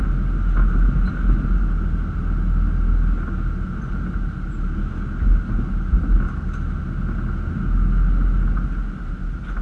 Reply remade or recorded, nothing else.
recorded